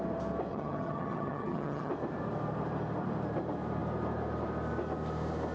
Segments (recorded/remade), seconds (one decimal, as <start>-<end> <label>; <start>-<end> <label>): 0.0-0.5 recorded; 0.5-1.9 remade; 1.9-5.5 recorded